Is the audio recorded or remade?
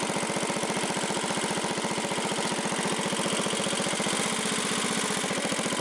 recorded